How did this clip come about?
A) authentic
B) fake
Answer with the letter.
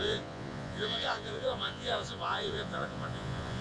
B